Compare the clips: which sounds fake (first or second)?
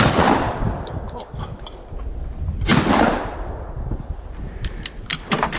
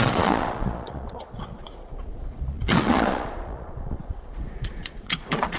second